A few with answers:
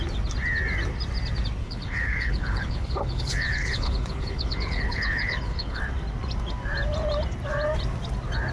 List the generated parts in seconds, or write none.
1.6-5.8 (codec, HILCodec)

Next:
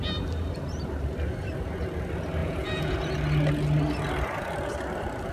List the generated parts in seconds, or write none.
2.4-2.9 (vocoder, Vocos)

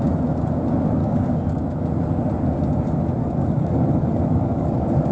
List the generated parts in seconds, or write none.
1.0-1.6 (codec, DAC); 3.2-5.1

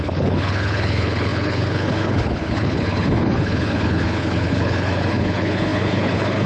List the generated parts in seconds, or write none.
0.0-6.5 (codec, HILCodec)